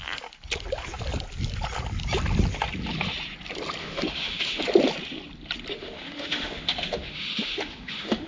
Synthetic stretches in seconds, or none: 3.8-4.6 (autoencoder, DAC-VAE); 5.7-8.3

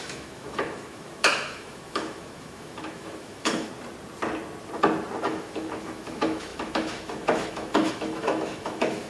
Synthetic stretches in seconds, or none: 0.0-3.7 (autoencoder, DAC-VAE); 5.2-9.1

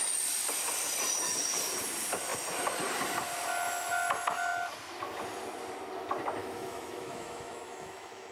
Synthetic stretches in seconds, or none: 6.4-8.3 (autoencoder, DAC-VAE)

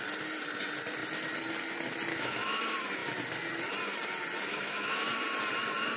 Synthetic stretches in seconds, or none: 2.1-2.6 (autoencoder, DAC-VAE); 4.5-5.1

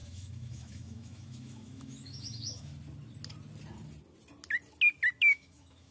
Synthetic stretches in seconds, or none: 0.0-2.7 (autoencoder, DAC-VAE); 5.2-5.9

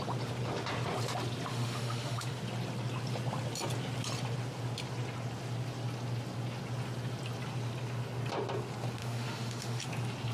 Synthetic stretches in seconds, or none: 1.5-2.4 (autoencoder, DAC-VAE); 9.0-9.8